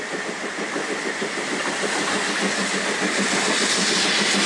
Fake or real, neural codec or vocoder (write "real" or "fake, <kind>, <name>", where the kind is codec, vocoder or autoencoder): real